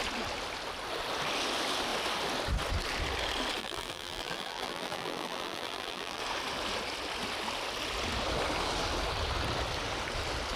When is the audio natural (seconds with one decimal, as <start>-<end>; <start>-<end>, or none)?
0.0-3.6; 6.2-10.6